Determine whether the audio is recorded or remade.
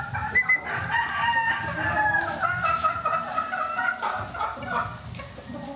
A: recorded